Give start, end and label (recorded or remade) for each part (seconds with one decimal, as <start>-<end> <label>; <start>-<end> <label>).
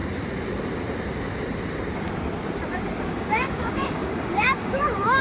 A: 0.0-3.1 recorded; 3.1-5.2 remade